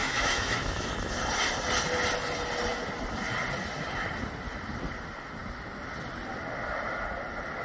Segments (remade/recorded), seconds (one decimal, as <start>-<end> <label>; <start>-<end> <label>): 0.0-0.9 remade; 0.9-7.6 recorded